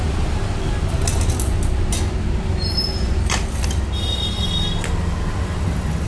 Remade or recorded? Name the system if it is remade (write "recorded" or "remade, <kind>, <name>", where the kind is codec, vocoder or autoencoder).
recorded